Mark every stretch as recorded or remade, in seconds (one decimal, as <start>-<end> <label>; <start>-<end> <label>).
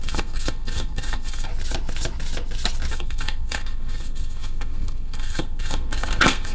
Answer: 0.0-1.5 remade; 1.5-2.9 recorded; 2.9-6.5 remade